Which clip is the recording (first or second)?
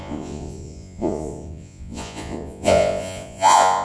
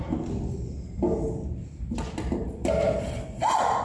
second